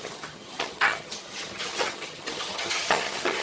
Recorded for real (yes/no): no